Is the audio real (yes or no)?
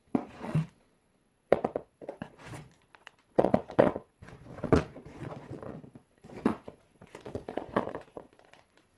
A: no